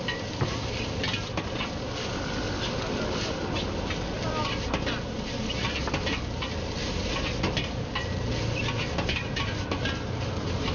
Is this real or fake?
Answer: real